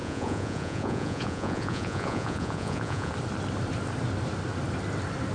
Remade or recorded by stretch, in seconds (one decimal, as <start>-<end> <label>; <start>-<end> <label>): 0.0-3.1 remade; 3.1-5.3 recorded